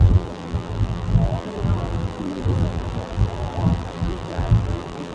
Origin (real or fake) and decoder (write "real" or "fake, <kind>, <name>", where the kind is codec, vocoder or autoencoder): fake, vocoder, BigVGAN v2